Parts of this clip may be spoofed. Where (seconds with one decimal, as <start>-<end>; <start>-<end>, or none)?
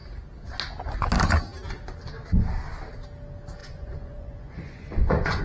3.6-5.4